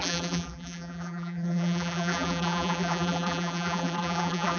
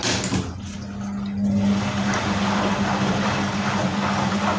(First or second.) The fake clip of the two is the first